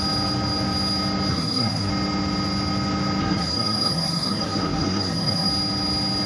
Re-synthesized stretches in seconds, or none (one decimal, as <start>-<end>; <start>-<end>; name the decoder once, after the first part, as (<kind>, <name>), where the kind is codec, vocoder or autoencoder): 1.3-1.9 (codec, SNAC); 3.2-5.5